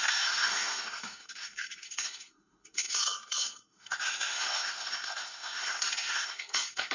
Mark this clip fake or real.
fake